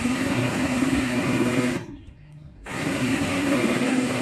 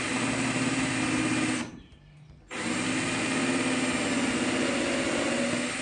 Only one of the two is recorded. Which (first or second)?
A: second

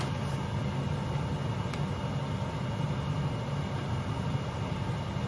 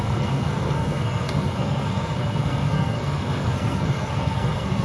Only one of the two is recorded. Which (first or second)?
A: first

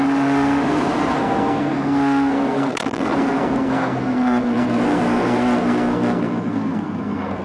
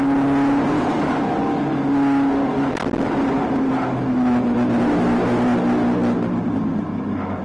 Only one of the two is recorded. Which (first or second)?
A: second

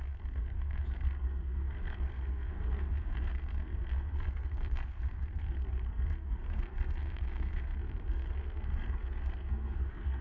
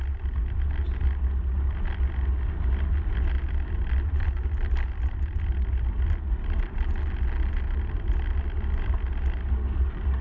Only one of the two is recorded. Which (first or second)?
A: second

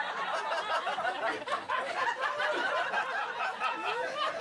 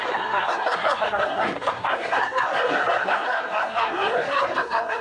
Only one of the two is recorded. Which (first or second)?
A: first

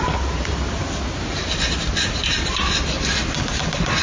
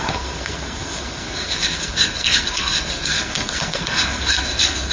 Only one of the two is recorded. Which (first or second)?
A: first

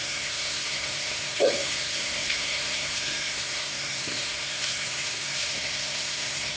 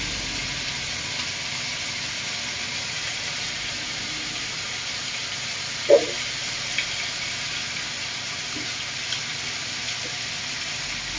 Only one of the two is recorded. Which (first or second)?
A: second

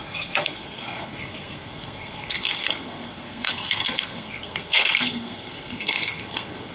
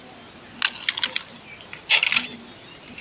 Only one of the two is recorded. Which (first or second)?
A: second